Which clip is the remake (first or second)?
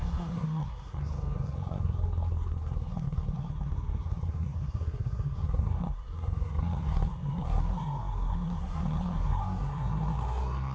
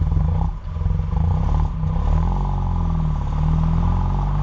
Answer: first